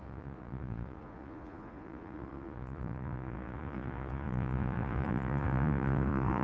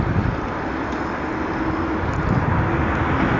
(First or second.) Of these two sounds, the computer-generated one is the first